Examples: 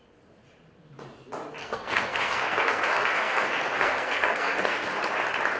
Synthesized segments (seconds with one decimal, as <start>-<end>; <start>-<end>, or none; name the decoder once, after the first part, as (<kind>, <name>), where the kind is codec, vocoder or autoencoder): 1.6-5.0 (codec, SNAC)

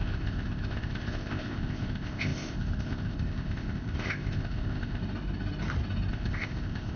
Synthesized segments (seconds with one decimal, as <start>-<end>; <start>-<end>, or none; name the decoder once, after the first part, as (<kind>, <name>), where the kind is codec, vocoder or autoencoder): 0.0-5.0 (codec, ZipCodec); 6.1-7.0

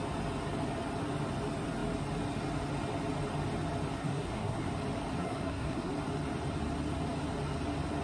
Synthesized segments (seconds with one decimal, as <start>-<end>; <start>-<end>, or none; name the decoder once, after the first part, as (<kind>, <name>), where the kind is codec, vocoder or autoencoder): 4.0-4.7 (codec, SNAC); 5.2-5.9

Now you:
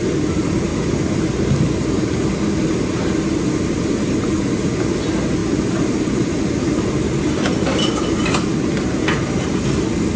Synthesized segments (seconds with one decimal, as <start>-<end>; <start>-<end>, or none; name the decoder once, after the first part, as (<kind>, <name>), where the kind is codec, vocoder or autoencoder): none

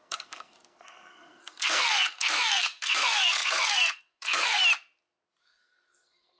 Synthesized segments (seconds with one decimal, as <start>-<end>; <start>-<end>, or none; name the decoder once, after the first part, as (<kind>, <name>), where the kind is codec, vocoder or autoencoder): 0.0-4.6 (codec, SNAC); 5.4-6.4

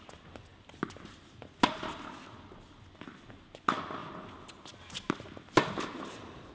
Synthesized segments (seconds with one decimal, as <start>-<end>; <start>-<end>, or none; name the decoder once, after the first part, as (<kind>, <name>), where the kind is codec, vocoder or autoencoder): none